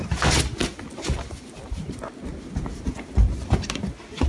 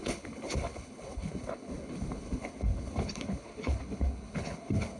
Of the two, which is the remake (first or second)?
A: second